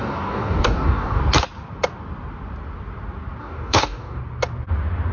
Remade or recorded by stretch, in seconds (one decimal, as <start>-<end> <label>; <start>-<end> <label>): 0.0-1.2 remade; 1.2-3.4 recorded; 3.4-4.2 remade; 4.2-5.1 recorded